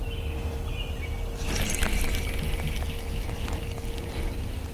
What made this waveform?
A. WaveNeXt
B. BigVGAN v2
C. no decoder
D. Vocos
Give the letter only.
C